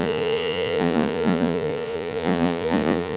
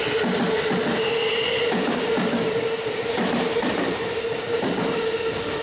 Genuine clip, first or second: second